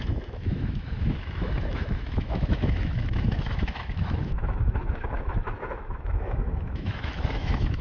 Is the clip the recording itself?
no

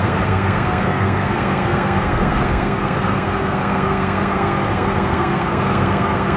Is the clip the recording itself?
no